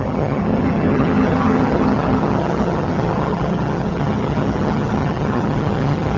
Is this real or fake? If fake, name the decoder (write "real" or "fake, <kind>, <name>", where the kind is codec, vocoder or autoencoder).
fake, vocoder, HiFi-GAN